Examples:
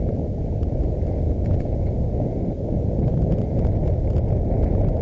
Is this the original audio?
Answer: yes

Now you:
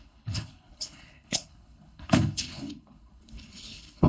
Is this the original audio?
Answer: no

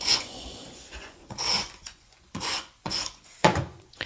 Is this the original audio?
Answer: no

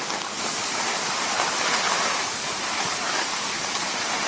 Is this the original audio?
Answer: yes